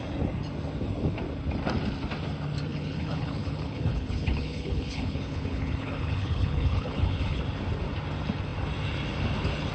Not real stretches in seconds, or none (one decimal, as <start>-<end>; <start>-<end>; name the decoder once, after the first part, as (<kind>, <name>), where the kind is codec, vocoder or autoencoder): 2.7-7.4 (codec, HILCodec)